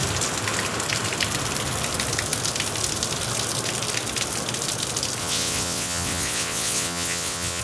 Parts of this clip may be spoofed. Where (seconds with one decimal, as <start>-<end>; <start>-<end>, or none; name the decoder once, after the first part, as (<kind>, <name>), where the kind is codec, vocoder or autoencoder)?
5.2-7.6 (vocoder, WaveNeXt)